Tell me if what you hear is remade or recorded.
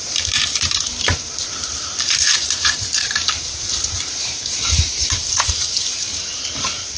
remade